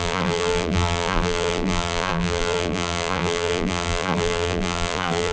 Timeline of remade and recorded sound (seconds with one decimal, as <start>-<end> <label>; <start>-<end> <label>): 0.0-5.3 remade